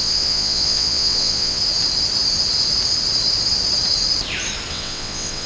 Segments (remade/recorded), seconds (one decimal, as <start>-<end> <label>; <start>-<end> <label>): 0.0-1.6 remade; 1.6-4.7 recorded; 4.7-5.5 remade